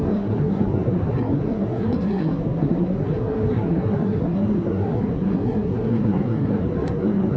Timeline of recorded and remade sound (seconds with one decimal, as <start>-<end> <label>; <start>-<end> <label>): 0.0-7.4 remade

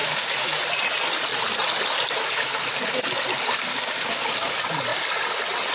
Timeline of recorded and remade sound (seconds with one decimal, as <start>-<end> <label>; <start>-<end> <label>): 0.0-0.6 remade; 0.6-3.7 recorded; 3.7-4.5 remade; 4.5-5.7 recorded